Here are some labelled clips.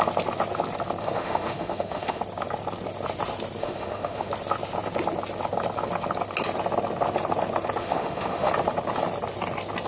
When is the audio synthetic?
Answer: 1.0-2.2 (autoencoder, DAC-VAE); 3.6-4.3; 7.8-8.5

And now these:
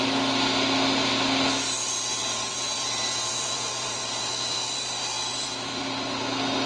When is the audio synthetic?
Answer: 2.2-6.2 (vocoder, BigVGAN v2)

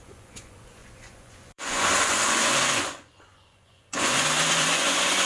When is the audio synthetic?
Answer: 0.0-5.3 (vocoder, Vocos)

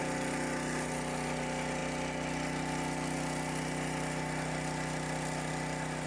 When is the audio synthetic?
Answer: none